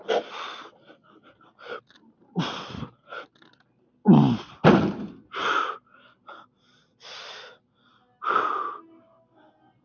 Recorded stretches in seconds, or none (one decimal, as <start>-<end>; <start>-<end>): 0.0-9.8